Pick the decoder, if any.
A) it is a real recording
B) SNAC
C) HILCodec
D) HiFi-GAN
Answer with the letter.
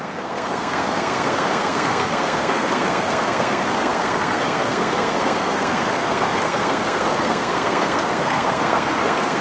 B